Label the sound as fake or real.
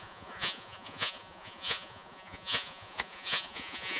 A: fake